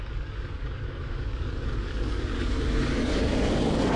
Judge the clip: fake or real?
fake